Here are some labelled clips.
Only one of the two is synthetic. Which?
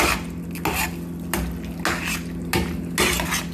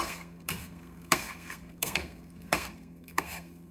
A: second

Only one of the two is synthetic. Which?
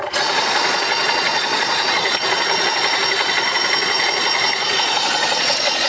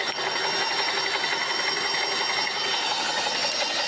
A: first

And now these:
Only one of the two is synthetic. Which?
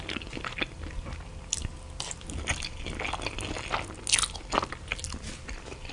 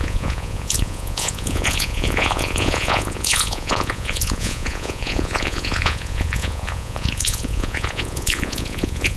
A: second